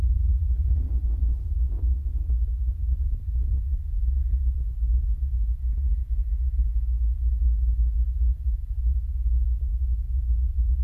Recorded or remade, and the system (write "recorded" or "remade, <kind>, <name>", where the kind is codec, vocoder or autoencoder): recorded